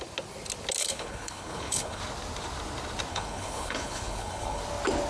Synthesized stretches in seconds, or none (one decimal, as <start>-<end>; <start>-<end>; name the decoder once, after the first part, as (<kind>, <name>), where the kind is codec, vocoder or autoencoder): 0.8-2.0 (codec, HILCodec); 3.1-4.6